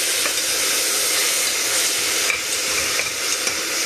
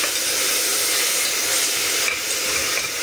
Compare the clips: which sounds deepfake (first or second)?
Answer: first